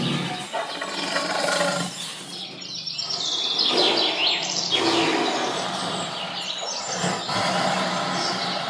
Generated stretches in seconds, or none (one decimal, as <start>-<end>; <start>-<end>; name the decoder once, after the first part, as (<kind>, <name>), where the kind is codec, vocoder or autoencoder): none